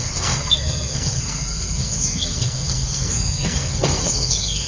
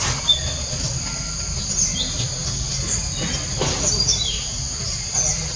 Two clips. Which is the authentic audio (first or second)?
second